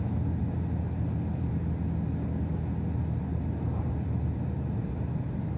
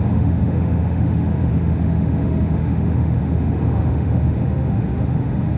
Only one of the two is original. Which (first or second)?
first